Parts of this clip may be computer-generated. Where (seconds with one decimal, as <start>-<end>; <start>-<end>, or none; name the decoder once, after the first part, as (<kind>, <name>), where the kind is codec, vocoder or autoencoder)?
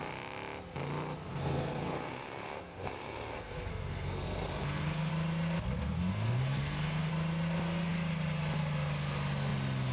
1.3-5.1 (codec, SNAC); 5.8-7.1